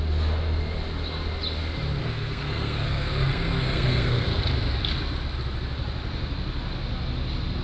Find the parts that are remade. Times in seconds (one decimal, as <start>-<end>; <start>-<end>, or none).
2.0-4.4